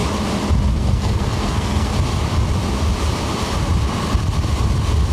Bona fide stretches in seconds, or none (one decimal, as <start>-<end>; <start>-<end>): 0.0-0.7; 1.9-5.1